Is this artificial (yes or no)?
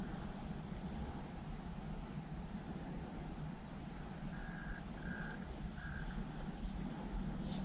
no